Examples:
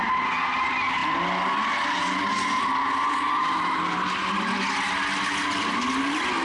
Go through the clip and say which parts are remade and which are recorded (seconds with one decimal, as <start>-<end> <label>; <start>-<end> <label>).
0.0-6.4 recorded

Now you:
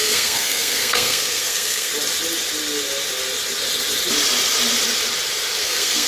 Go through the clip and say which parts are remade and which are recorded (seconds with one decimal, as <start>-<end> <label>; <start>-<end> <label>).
0.0-1.9 remade; 1.9-5.6 recorded; 5.6-6.1 remade

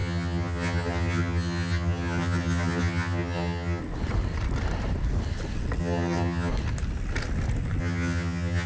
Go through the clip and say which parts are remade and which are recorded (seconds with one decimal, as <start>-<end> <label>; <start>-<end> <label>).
0.0-3.8 remade; 3.8-5.8 recorded; 5.8-6.5 remade; 6.5-7.8 recorded; 7.8-8.7 remade

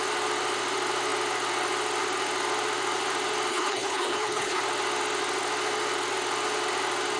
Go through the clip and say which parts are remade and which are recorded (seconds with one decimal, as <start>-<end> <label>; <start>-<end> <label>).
0.0-3.5 recorded; 3.5-4.6 remade; 4.6-7.2 recorded